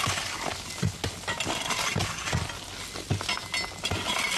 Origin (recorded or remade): recorded